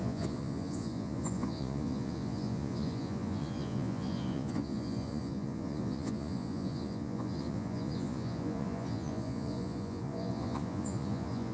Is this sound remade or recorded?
remade